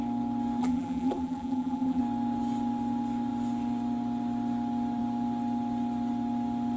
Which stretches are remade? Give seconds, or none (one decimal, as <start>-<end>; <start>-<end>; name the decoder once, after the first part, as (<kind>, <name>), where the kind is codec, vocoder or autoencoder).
0.6-2.0 (vocoder, BigVGAN v2)

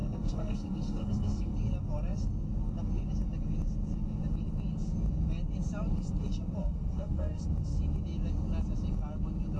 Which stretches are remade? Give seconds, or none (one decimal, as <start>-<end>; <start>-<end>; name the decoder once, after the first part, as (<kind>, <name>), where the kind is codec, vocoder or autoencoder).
0.0-1.5 (codec, SNAC); 6.6-7.4

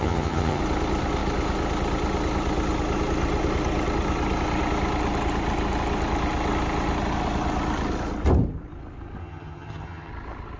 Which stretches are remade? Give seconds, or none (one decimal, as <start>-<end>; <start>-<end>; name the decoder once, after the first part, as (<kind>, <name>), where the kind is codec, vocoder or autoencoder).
0.0-0.6 (vocoder, HiFi-GAN); 9.2-10.1

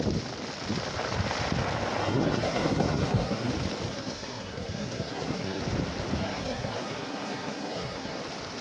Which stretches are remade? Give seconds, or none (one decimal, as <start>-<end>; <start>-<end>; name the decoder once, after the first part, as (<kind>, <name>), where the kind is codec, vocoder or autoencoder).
2.0-3.5 (codec, SNAC); 3.9-5.6; 6.2-8.2